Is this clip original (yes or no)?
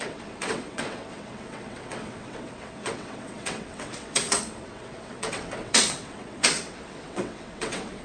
no